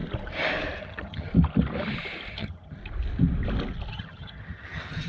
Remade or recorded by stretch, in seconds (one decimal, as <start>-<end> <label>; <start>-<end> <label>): 0.0-0.8 recorded; 0.8-1.3 remade; 1.3-2.3 recorded; 2.3-2.8 remade; 2.8-3.9 recorded; 3.9-5.1 remade